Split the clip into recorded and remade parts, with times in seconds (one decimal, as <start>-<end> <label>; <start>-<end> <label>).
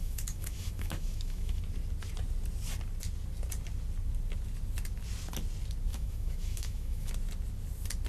0.0-1.6 remade; 1.6-5.9 recorded; 5.9-7.1 remade; 7.1-8.1 recorded